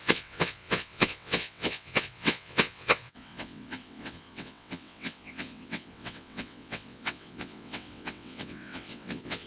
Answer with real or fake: fake